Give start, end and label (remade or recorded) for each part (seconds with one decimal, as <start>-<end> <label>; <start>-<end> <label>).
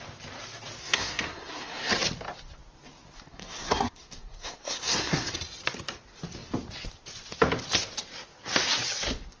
0.0-0.8 recorded; 0.8-1.9 remade; 1.9-3.3 recorded; 3.3-5.3 remade; 5.3-9.4 recorded